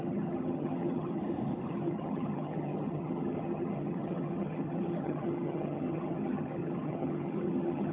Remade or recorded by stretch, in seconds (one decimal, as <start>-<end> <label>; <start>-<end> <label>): 0.0-1.2 remade; 1.2-1.7 recorded; 1.7-7.9 remade